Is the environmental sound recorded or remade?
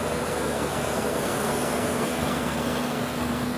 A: remade